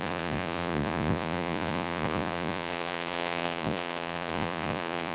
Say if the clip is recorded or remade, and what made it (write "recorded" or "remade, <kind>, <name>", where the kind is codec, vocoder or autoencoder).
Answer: remade, vocoder, Vocos